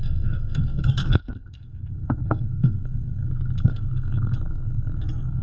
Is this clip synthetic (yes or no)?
yes